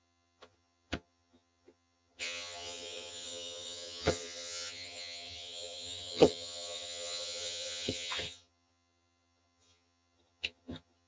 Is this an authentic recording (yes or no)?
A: no